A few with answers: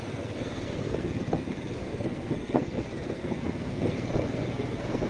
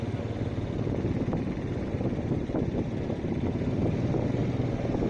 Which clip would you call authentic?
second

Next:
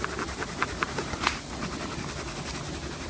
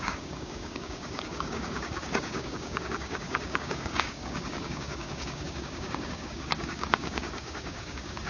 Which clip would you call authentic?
first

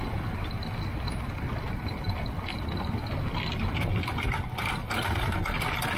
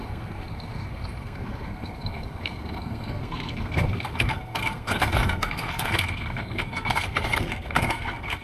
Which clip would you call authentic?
first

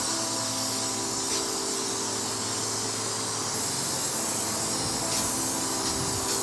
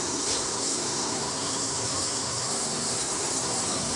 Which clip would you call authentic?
first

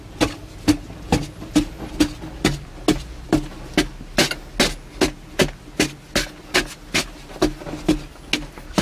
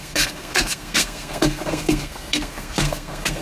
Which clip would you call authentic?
first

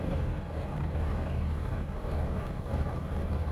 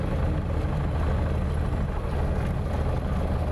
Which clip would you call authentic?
second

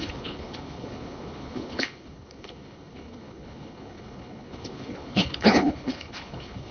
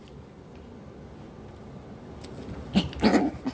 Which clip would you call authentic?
second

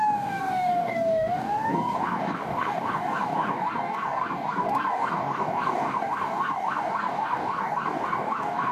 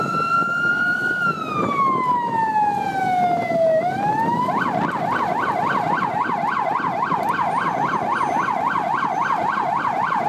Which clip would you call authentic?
second